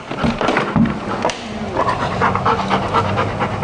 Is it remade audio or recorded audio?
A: recorded